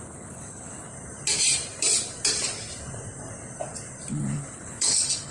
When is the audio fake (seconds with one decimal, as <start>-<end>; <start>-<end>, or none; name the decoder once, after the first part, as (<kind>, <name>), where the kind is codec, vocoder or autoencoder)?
0.0-0.9 (codec, HILCodec); 4.1-5.3

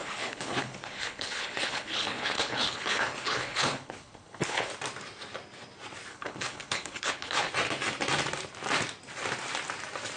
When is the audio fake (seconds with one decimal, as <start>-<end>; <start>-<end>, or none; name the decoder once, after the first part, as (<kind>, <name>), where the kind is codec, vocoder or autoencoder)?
0.0-4.7 (codec, HILCodec); 6.1-7.5

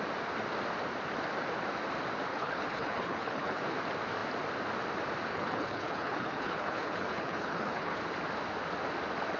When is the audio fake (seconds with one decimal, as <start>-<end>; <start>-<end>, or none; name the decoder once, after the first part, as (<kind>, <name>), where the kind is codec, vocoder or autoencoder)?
2.3-3.6 (codec, HILCodec); 5.3-8.0

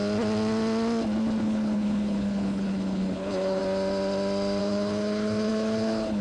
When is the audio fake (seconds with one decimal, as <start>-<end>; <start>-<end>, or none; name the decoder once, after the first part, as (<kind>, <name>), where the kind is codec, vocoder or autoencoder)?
1.4-3.6 (codec, HILCodec); 4.6-6.2